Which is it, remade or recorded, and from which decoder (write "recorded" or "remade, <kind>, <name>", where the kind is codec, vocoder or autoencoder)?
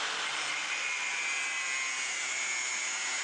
recorded